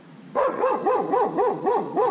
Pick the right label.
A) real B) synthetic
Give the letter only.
B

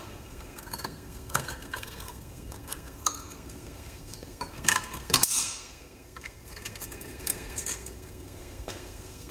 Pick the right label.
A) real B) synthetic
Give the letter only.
B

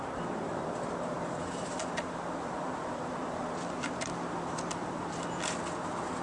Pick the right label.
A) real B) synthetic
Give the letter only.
B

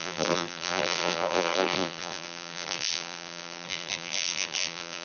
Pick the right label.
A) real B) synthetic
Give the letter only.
B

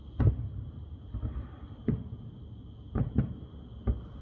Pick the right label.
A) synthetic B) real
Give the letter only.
B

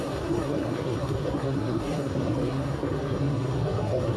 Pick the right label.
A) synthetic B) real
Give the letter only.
A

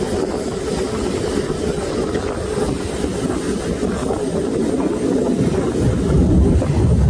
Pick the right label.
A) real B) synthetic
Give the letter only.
A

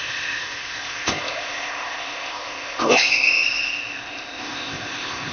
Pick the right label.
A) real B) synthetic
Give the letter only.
B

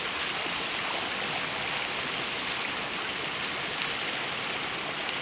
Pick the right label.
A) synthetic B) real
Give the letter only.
B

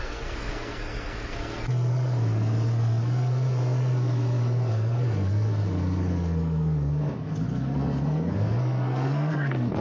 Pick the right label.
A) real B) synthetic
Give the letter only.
B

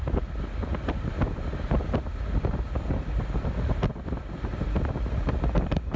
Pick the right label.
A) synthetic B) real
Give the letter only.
B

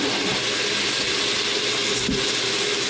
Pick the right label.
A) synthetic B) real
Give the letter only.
B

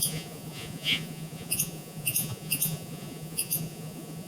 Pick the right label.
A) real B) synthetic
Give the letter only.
B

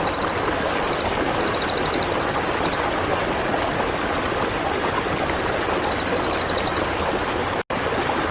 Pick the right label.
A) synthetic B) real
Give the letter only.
B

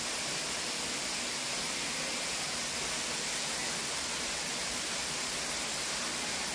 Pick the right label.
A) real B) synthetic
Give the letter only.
A